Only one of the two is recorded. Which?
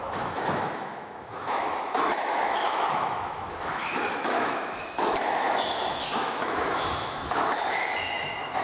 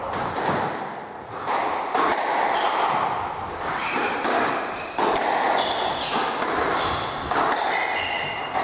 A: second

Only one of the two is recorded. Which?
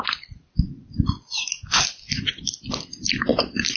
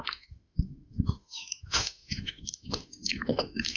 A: first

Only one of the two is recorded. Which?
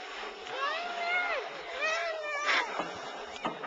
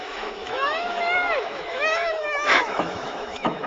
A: first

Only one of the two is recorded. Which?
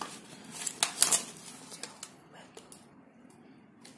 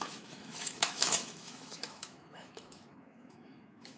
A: first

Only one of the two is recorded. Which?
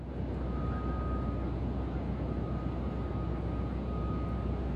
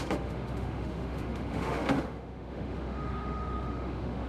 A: first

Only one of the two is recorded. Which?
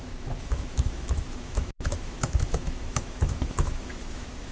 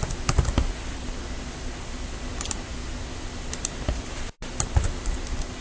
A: second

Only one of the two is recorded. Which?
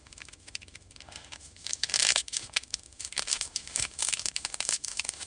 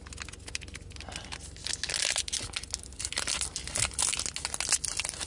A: second